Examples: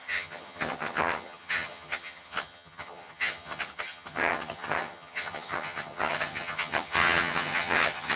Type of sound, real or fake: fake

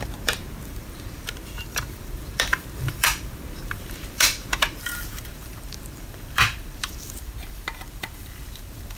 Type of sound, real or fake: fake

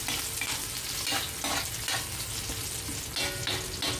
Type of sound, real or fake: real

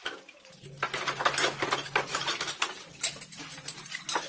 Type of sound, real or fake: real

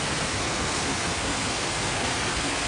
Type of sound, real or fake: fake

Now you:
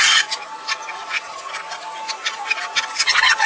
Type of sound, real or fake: real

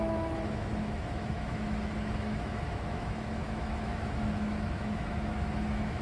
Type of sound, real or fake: fake